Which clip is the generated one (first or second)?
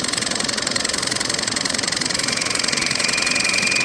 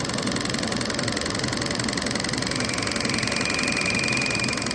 first